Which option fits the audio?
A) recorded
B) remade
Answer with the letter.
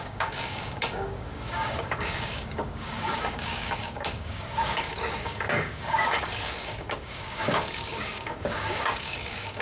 B